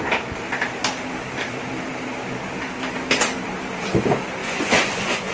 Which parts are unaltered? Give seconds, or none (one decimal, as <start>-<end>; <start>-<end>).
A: 0.0-4.4